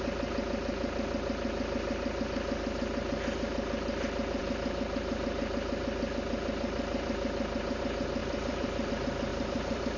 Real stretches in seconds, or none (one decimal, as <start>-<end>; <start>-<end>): 0.0-8.2; 8.9-9.3